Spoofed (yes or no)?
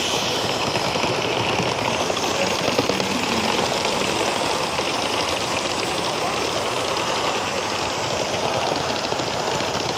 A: no